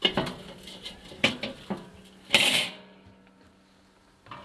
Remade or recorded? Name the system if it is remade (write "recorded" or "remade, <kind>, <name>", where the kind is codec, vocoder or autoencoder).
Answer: recorded